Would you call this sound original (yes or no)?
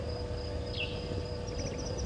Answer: yes